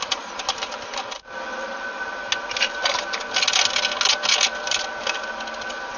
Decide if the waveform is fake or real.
real